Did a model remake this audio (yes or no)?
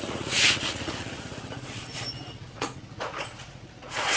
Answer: yes